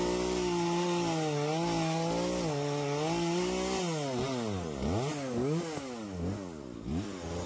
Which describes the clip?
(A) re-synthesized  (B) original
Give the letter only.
B